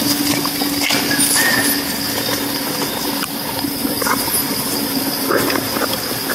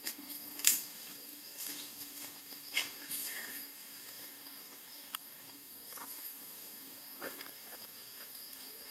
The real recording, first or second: first